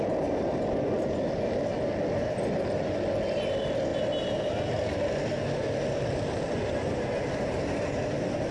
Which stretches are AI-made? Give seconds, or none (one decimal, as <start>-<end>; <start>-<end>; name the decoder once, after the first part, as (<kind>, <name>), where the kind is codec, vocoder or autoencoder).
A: none